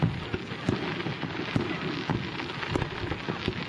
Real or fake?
real